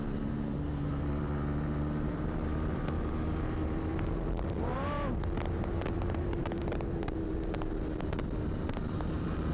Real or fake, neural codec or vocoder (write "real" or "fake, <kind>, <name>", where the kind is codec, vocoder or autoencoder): fake, vocoder, BigVGAN v2